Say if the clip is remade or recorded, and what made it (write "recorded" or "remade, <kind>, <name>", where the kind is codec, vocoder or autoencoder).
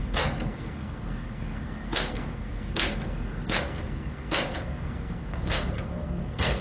remade, codec, SNAC